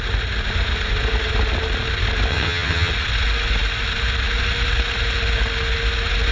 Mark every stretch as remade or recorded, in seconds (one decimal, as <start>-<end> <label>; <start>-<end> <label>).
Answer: 0.0-2.3 recorded; 2.3-2.9 remade; 2.9-6.3 recorded